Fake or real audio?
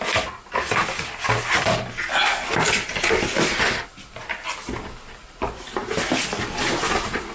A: real